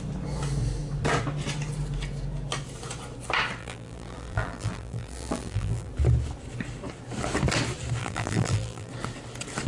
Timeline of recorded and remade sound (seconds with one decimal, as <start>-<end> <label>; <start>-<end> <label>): 0.0-3.6 recorded; 3.6-5.9 remade; 5.9-8.0 recorded; 8.0-8.9 remade; 8.9-9.7 recorded